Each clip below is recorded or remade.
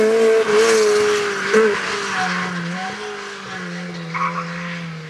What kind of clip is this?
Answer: recorded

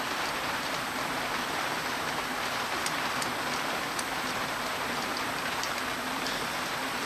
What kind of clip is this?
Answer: remade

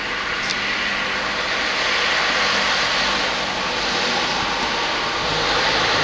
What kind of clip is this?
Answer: recorded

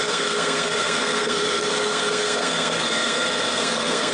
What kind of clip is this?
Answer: remade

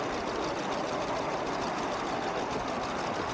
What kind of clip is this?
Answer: recorded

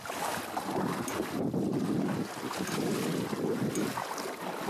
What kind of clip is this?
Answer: recorded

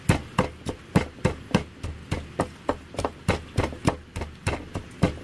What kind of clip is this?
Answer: recorded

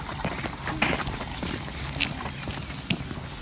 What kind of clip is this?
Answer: recorded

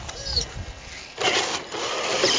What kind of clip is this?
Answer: recorded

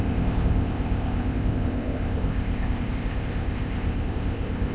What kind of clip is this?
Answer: remade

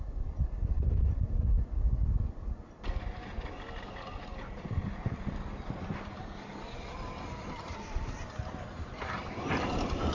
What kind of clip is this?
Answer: recorded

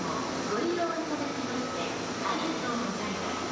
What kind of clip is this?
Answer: recorded